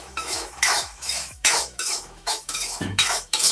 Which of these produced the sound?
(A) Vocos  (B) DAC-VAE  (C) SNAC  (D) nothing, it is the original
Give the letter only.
B